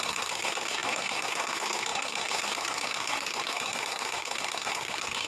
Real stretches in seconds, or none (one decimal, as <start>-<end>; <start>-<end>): none